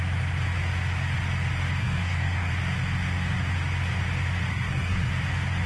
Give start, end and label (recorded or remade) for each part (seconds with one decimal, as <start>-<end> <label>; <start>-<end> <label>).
0.0-1.8 recorded; 1.8-2.5 remade; 2.5-4.5 recorded; 4.5-5.1 remade; 5.1-5.7 recorded